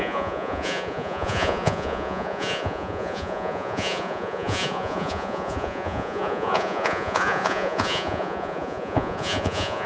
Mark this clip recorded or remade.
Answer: remade